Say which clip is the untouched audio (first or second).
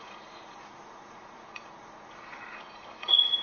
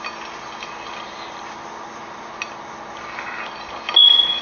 second